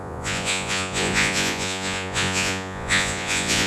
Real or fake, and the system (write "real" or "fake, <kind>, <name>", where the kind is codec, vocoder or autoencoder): fake, vocoder, Vocos